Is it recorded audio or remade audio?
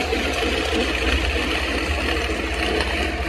recorded